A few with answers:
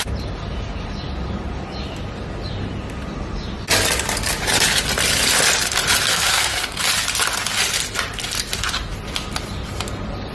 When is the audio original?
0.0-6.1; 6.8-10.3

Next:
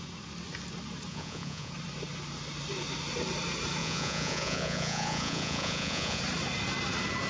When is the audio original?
0.0-1.1; 1.7-3.8; 6.2-7.3